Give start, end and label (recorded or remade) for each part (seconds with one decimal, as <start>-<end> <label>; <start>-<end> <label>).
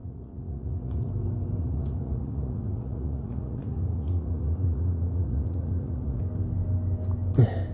0.0-1.1 remade; 1.1-1.6 recorded; 1.6-6.2 remade; 6.2-7.7 recorded